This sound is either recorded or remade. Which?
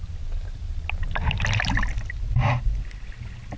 recorded